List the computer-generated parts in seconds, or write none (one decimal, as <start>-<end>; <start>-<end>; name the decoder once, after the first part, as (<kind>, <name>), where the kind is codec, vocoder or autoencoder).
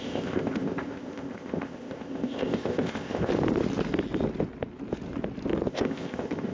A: 0.0-3.3 (codec, ZipCodec); 5.7-6.5